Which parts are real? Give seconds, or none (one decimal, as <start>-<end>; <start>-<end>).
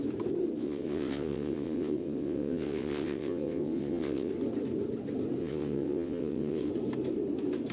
0.0-0.6; 4.3-5.4; 6.7-7.7